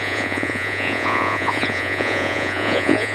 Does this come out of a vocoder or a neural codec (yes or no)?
yes